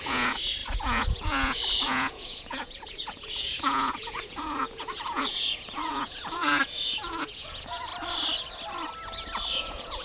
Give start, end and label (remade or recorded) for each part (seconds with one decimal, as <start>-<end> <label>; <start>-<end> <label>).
0.0-7.9 remade; 7.9-9.5 recorded; 9.5-10.0 remade